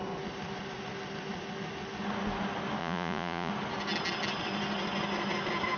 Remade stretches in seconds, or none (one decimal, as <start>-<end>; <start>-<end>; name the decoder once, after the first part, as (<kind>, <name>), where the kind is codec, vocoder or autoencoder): 2.8-3.5 (vocoder, Vocos)

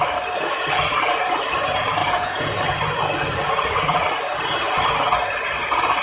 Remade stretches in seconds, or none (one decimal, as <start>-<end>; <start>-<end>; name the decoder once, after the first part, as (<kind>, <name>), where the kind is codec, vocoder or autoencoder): 2.0-2.6 (vocoder, Vocos)

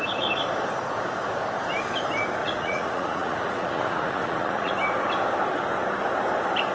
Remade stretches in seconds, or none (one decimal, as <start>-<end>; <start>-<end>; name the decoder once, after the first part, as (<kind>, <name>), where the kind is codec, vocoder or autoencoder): 2.4-4.7 (vocoder, Vocos)

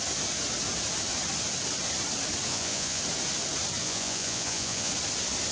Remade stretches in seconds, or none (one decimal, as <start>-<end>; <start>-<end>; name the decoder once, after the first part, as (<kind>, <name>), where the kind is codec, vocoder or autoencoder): 2.5-3.0 (vocoder, Vocos); 3.8-4.9

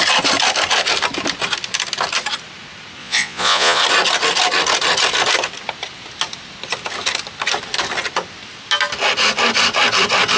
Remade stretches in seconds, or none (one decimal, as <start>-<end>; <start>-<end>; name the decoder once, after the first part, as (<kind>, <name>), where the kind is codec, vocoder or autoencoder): 3.0-3.8 (vocoder, Vocos)

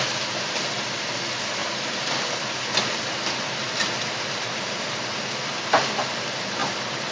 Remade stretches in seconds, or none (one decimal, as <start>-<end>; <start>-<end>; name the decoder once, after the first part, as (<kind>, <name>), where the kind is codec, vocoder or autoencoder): none